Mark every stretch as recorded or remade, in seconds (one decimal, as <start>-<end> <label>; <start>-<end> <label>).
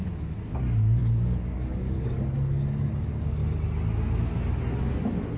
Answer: 0.0-3.4 remade; 3.4-5.4 recorded